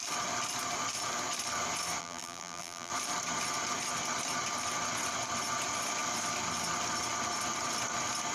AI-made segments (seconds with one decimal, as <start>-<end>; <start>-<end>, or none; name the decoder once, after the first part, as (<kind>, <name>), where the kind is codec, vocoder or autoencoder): 2.0-2.9 (vocoder, BigVGAN v2)